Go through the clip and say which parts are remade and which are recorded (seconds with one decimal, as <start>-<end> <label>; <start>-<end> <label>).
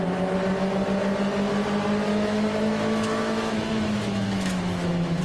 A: 0.0-2.1 recorded; 2.1-5.2 remade